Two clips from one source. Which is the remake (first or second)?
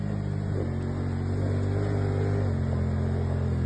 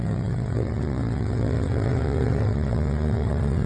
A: second